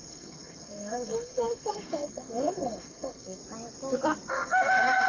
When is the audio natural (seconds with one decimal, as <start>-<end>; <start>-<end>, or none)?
3.4-4.3